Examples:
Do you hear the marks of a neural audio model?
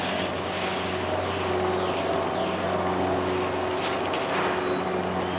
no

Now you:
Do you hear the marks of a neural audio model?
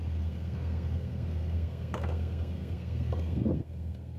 yes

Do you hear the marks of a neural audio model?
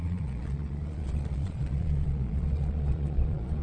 yes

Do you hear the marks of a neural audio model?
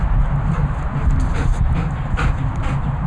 no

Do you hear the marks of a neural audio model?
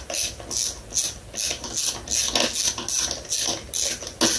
no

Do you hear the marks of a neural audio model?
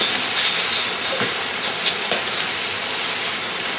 no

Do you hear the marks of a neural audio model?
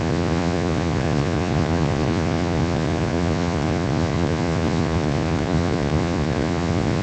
yes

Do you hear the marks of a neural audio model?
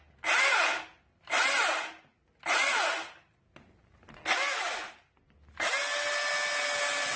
no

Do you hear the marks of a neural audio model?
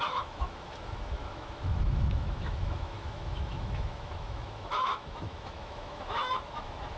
yes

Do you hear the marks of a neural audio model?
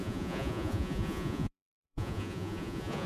yes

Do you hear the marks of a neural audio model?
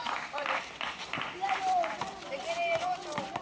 yes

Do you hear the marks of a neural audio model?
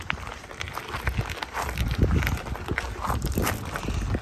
no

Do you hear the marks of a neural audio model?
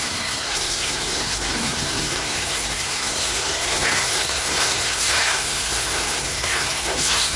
yes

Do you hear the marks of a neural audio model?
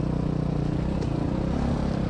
no